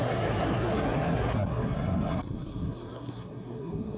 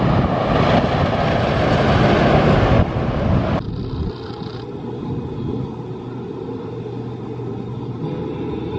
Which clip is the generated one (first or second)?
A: first